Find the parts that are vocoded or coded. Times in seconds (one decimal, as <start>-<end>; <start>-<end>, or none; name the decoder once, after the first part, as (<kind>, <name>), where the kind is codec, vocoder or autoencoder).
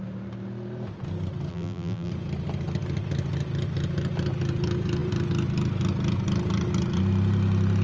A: 1.5-2.1 (vocoder, BigVGAN v2)